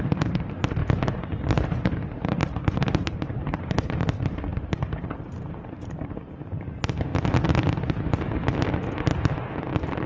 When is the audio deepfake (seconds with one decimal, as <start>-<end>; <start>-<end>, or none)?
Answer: 0.0-0.8; 1.5-7.1